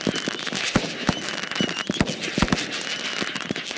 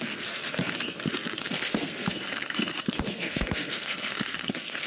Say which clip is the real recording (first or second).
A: first